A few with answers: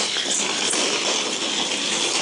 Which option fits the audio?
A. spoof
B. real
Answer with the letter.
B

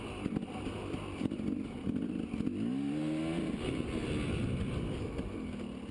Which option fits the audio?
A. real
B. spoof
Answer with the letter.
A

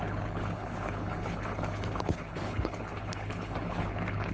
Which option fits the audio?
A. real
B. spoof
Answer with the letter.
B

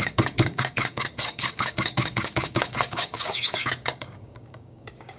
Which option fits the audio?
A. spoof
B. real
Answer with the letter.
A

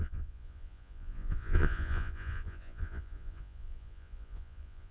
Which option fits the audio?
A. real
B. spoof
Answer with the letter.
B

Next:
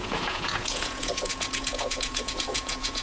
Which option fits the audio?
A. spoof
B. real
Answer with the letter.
A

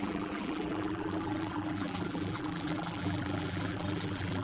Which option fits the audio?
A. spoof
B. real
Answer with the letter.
A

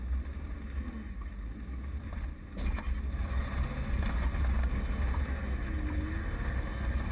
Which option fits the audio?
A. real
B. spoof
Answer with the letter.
A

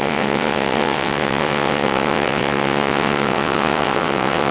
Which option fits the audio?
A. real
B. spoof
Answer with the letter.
B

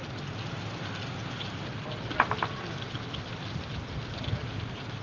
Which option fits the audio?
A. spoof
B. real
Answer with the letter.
B